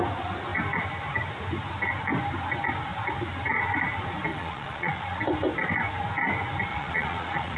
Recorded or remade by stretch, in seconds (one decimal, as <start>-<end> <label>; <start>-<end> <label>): 0.0-4.3 recorded; 4.3-5.2 remade; 5.2-6.7 recorded; 6.7-7.6 remade